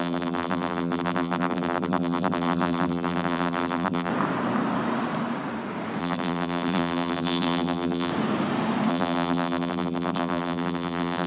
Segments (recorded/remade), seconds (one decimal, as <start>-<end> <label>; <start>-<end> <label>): 0.0-4.1 remade; 4.1-6.0 recorded; 6.0-8.1 remade; 8.1-8.9 recorded; 8.9-11.3 remade